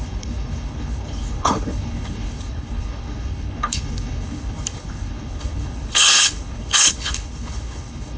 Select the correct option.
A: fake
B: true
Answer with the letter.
A